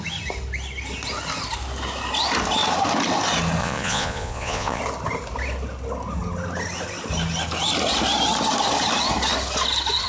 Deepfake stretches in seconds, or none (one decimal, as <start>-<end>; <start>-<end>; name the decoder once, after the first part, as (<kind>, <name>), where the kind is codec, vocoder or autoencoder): 3.6-4.8 (vocoder, Vocos)